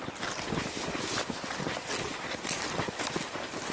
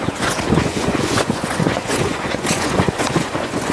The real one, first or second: first